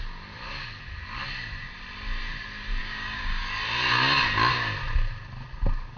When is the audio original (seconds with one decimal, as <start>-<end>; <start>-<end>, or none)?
0.0-2.8; 3.4-6.0

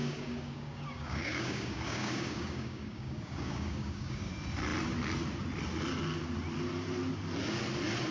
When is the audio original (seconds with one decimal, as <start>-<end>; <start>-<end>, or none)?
4.3-8.1